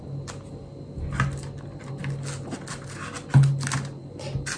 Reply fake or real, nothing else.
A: real